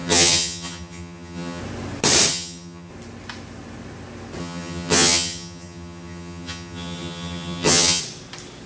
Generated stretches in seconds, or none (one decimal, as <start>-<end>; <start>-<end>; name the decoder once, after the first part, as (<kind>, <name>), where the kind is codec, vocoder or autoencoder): 0.0-1.6 (vocoder, HiFi-GAN); 2.3-2.9; 4.4-8.0